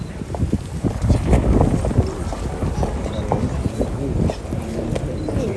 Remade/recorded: recorded